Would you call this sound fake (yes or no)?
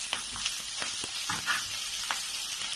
no